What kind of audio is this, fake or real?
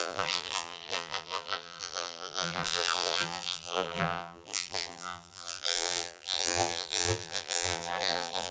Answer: fake